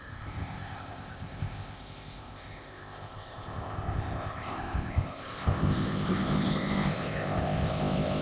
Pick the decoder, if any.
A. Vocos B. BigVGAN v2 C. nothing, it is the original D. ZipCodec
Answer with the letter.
D